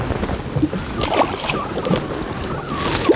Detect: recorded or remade recorded